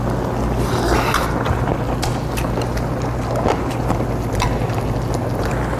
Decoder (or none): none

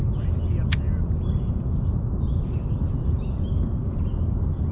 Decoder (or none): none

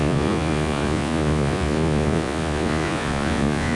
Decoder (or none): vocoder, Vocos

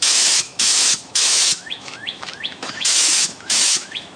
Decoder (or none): autoencoder, DAC-VAE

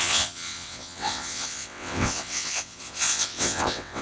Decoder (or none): vocoder, WaveNeXt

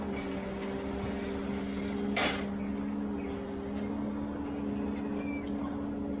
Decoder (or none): none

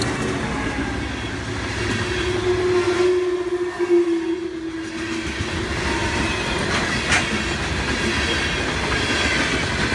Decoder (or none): none